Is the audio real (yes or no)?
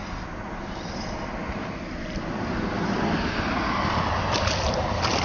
yes